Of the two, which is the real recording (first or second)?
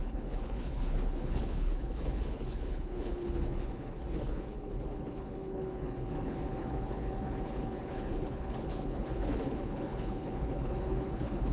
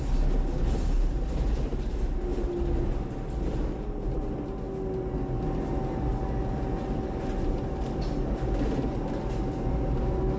second